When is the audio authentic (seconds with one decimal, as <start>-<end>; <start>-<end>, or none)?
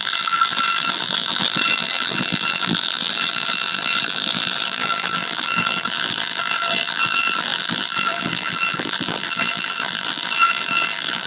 none